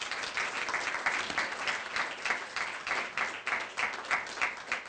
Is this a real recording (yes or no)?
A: yes